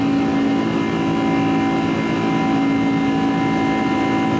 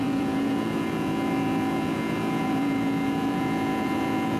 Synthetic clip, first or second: second